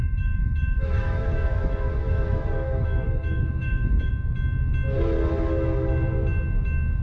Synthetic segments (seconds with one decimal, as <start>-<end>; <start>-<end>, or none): 0.0-4.1

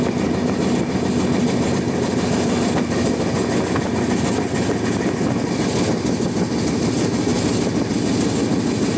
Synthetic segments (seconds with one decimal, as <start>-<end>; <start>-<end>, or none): none

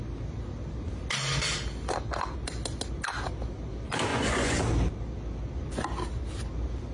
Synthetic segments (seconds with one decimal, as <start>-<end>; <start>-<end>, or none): 4.1-4.6

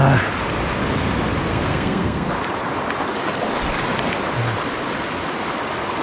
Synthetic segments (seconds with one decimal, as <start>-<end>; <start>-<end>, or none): 1.5-2.3

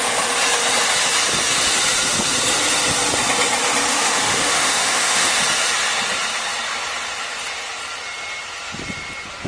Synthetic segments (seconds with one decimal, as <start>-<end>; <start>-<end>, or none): 3.9-5.3

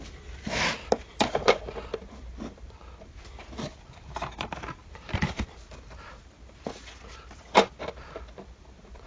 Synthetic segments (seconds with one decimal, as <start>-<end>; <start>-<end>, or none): 4.8-5.6

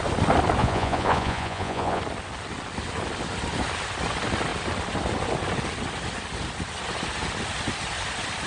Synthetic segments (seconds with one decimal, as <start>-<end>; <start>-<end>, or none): 0.6-2.0

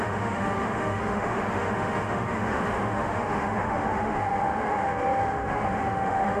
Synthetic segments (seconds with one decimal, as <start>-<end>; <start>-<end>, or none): 0.0-6.4